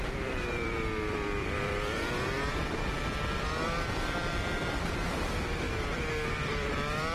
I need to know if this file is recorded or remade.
remade